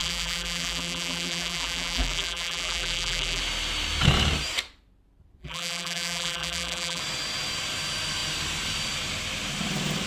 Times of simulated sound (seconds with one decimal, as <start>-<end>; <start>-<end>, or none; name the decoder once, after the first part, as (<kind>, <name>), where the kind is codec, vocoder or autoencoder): 0.0-3.4 (vocoder, BigVGAN v2); 5.4-7.0